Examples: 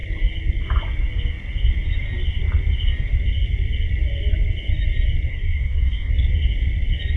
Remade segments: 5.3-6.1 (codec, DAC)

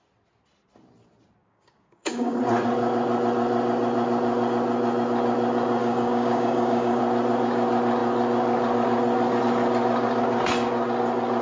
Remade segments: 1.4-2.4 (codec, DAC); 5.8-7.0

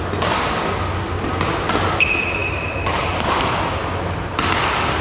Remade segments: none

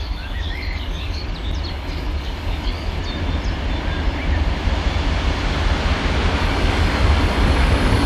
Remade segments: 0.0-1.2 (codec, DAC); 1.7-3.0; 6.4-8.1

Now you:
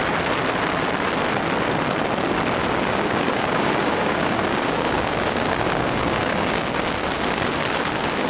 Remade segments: 2.6-6.7 (codec, DAC)